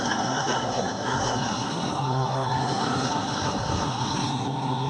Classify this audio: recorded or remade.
remade